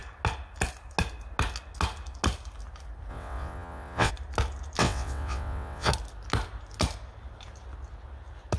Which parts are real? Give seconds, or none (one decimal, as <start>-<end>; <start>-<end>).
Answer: 0.0-3.1; 4.1-4.8; 5.9-8.6